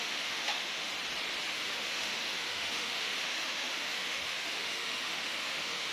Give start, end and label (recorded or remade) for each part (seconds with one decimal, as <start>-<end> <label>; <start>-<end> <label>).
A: 0.0-0.9 remade; 0.9-1.5 recorded; 1.5-5.9 remade